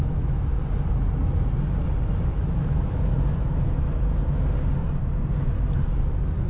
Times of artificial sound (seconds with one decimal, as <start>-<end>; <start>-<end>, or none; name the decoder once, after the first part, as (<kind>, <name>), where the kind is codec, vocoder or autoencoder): 0.0-0.6 (autoencoder, DAC-VAE); 2.3-3.8

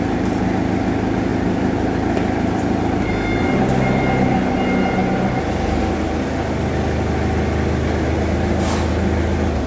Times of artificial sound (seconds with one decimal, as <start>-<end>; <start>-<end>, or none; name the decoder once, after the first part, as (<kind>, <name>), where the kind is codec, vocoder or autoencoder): 1.3-4.0 (vocoder, BigVGAN v2)

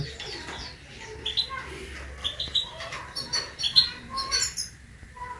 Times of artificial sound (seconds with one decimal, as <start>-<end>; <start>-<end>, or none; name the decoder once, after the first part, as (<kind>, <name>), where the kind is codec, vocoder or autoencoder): 2.2-5.4 (vocoder, BigVGAN v2)

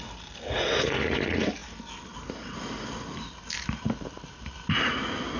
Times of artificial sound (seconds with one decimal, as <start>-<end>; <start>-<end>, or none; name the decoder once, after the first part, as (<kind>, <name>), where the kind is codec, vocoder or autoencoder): none